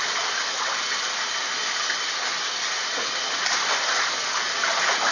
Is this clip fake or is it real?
real